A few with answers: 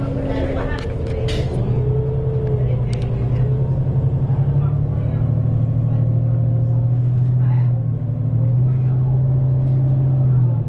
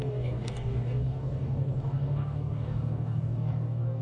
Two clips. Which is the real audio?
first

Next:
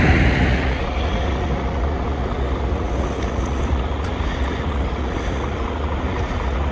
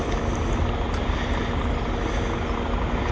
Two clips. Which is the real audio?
second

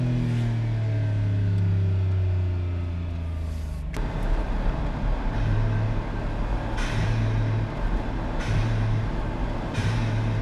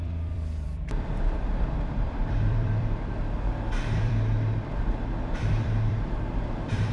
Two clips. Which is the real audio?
first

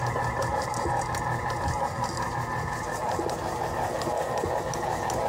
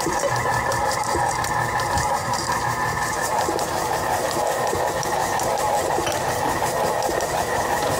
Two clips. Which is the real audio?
first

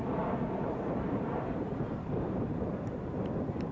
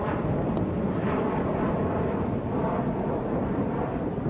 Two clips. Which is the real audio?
second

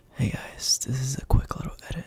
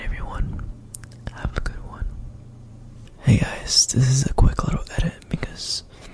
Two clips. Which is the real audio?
first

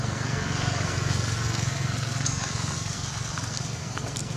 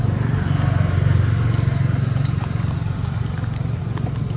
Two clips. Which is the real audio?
second